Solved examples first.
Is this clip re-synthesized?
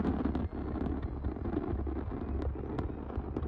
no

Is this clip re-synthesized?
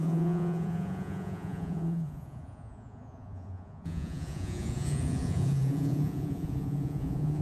yes